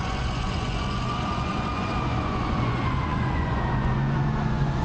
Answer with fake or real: fake